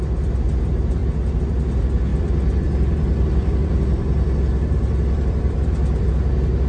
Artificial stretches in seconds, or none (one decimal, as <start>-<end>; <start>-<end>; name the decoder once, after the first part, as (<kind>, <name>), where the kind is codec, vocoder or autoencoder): 2.1-6.1 (vocoder, BigVGAN v2)